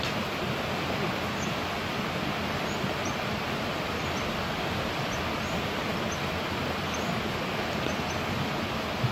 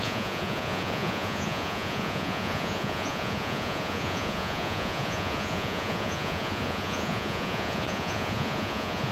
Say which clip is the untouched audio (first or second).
first